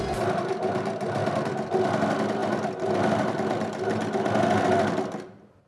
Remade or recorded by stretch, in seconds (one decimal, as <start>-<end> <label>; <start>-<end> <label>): 0.0-5.7 recorded